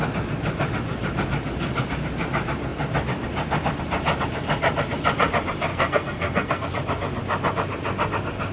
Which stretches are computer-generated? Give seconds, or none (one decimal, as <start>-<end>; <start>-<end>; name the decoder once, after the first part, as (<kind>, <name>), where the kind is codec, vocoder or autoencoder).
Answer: 5.7-6.7 (codec, SNAC)